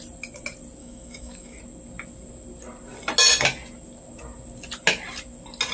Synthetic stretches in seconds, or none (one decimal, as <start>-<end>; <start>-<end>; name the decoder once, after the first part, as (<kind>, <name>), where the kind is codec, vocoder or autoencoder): 0.8-1.6 (autoencoder, DAC-VAE)

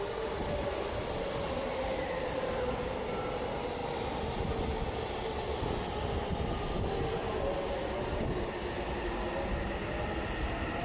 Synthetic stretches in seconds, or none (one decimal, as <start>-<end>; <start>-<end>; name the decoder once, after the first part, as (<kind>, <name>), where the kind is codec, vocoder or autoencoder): none

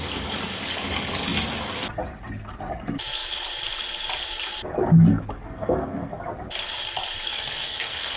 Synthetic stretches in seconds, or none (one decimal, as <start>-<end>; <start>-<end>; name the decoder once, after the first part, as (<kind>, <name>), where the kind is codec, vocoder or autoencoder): 5.1-6.2 (codec, SNAC); 7.3-8.2

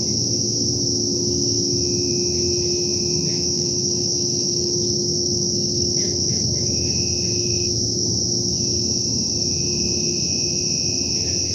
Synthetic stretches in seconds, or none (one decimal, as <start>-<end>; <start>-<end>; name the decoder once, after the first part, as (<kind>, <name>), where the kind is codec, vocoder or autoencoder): 3.3-6.9 (autoencoder, DAC-VAE)

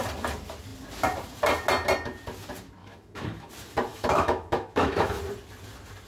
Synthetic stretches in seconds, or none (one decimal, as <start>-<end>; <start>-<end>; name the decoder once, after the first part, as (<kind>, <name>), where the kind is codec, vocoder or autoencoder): 2.8-3.5 (autoencoder, DAC-VAE); 3.9-5.2

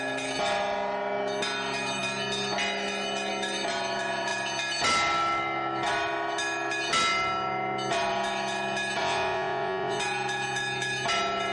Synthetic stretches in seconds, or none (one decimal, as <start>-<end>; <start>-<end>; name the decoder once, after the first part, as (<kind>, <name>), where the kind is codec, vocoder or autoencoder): 9.0-10.0 (vocoder, Vocos)

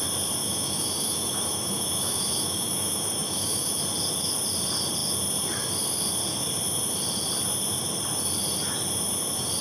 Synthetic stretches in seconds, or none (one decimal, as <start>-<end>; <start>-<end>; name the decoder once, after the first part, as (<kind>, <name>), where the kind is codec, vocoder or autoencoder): 0.4-3.8 (autoencoder, DAC-VAE)

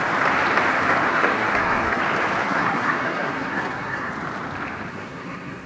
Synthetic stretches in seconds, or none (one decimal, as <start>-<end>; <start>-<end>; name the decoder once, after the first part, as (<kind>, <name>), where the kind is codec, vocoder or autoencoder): 1.1-2.0 (codec, SNAC); 2.4-4.1; 4.9-5.7